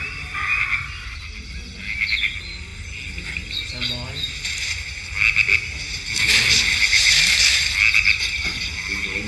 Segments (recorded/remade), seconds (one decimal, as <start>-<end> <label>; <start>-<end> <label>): 0.0-9.3 recorded